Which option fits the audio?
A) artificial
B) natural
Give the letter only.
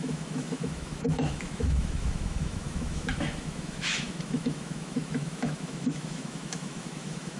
A